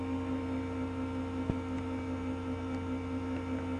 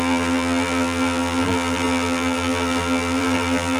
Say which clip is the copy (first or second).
second